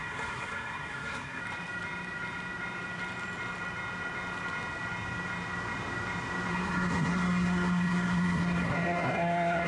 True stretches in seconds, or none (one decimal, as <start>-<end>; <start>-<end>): 1.4-6.5